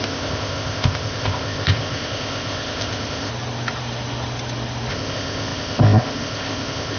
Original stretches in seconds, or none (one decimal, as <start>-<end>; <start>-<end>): 3.3-4.9